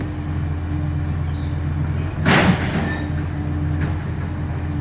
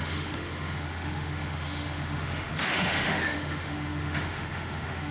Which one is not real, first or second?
second